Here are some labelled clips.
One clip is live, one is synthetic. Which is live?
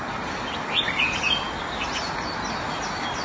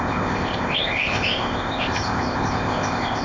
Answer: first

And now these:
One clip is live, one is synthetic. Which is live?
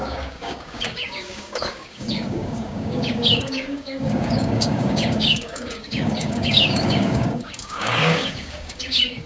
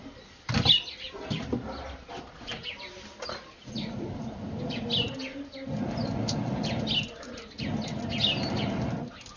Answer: second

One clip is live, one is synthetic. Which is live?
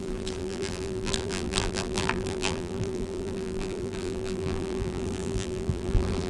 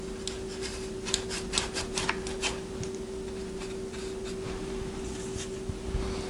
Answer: second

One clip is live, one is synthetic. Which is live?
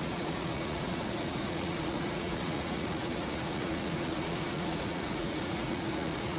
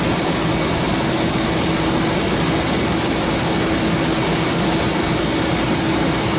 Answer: second